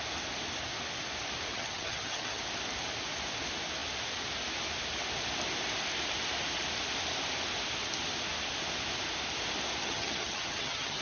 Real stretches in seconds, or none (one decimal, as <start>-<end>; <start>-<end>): 0.0-1.5; 2.4-9.8